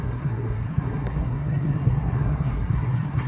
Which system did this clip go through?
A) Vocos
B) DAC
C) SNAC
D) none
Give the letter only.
C